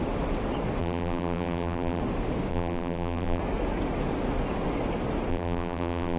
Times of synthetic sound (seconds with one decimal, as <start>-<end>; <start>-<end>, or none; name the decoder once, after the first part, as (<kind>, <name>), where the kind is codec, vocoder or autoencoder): 0.8-2.0 (vocoder, BigVGAN v2); 2.5-3.4; 5.3-6.2